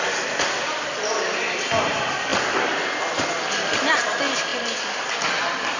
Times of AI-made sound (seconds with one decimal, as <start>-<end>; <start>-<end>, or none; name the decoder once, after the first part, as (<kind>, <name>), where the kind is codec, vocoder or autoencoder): none